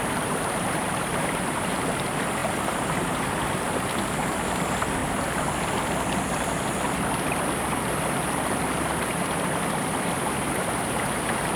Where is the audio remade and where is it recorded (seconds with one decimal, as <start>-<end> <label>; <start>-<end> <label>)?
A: 0.0-5.0 remade; 5.0-10.2 recorded; 10.2-11.6 remade